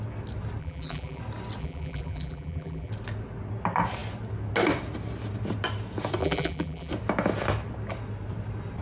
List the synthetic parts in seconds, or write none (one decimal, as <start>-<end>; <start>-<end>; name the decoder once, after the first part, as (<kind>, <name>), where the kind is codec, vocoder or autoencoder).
0.6-1.2 (vocoder, BigVGAN v2); 1.6-2.9; 6.2-6.9